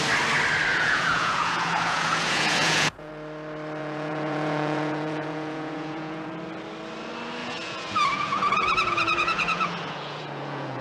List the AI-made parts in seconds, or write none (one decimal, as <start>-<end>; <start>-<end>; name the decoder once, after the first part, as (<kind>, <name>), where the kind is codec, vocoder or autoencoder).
0.7-3.1 (vocoder, Vocos); 3.8-6.3; 7.4-10.8